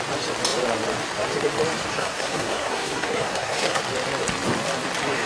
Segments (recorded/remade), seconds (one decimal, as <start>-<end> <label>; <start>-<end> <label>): 0.0-1.9 recorded; 1.9-3.8 remade; 3.8-5.3 recorded